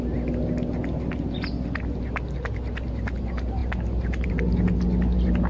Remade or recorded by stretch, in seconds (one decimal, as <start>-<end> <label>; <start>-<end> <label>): 0.0-5.5 recorded